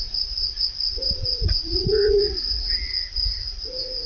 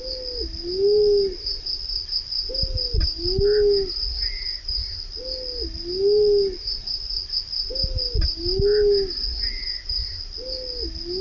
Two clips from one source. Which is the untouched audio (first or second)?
second